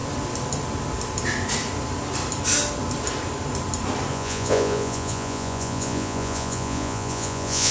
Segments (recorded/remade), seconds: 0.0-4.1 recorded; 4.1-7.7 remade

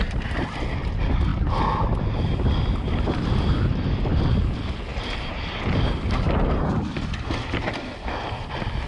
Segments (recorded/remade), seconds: 0.0-4.9 recorded; 4.9-5.7 remade; 5.7-8.9 recorded

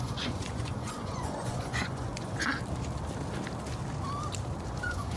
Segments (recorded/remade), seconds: 0.0-2.4 remade; 2.4-4.7 recorded; 4.7-5.2 remade

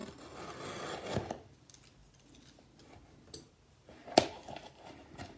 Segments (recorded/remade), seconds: 0.0-5.4 recorded

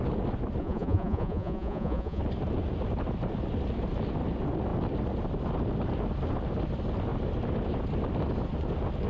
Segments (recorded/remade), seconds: 0.0-0.6 recorded; 0.6-2.2 remade; 2.2-9.1 recorded

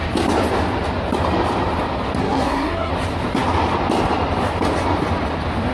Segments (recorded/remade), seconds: 0.0-2.2 recorded; 2.2-2.9 remade; 2.9-5.7 recorded

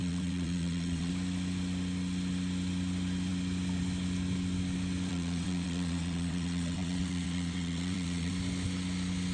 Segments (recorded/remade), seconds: 0.0-1.1 remade; 1.1-5.1 recorded; 5.1-8.3 remade; 8.3-9.3 recorded

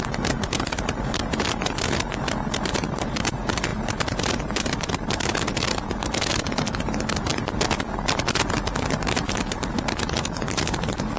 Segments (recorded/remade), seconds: 0.0-7.3 remade; 7.3-9.0 recorded; 9.0-11.2 remade